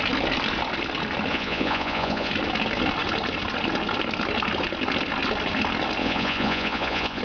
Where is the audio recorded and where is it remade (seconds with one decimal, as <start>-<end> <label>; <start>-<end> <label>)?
0.0-1.3 recorded; 1.3-2.3 remade; 2.3-6.0 recorded; 6.0-7.2 remade